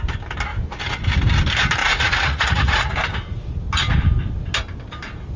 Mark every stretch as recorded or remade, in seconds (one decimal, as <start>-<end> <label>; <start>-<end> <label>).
0.0-1.8 recorded; 1.8-2.9 remade; 2.9-5.4 recorded